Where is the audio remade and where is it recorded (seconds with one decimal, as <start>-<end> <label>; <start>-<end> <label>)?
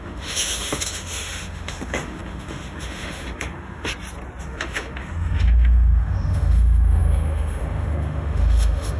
0.0-3.9 remade; 3.9-4.4 recorded; 4.4-9.0 remade